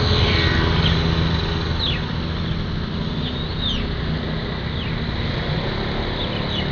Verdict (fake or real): real